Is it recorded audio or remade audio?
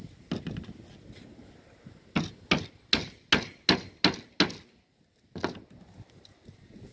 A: recorded